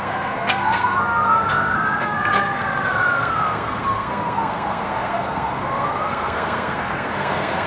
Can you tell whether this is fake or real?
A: fake